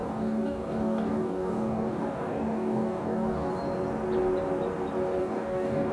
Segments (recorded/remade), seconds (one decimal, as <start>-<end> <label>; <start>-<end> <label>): 0.0-3.5 remade; 3.5-5.2 recorded; 5.2-5.9 remade